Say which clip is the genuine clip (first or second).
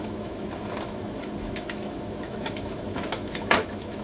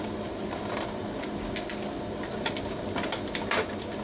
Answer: second